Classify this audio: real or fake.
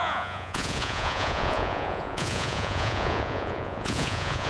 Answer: fake